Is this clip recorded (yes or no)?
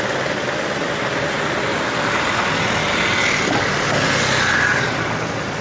yes